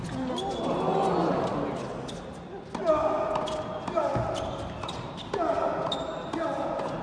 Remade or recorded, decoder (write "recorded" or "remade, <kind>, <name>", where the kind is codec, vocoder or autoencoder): recorded